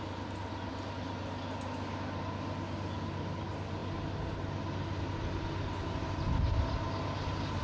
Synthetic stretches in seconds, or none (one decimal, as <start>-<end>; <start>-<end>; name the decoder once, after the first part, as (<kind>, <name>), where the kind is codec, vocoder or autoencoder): none